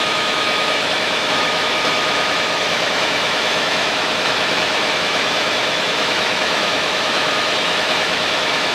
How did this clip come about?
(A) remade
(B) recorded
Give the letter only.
A